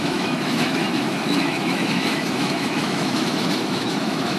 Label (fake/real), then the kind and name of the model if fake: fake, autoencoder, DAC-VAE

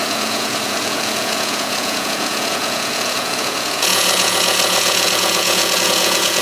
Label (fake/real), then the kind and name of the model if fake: fake, vocoder, Vocos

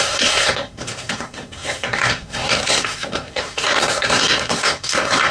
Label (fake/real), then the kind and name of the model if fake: fake, codec, SNAC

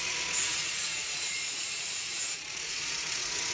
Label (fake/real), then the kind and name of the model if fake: fake, vocoder, Vocos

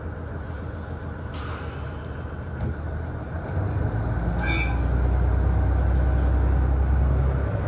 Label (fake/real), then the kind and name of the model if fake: real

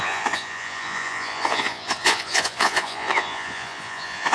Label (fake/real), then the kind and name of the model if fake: fake, vocoder, Vocos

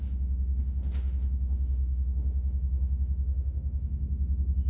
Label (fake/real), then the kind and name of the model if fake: fake, autoencoder, DAC-VAE